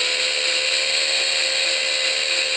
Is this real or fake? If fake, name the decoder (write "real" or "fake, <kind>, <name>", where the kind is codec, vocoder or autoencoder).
real